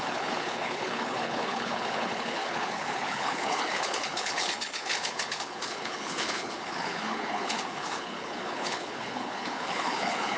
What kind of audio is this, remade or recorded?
remade